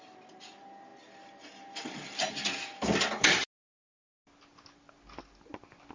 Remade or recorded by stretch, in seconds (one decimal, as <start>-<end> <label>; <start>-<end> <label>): 0.0-5.9 recorded